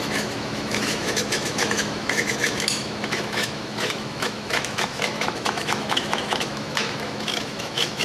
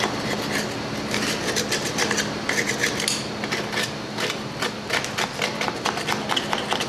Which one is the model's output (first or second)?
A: first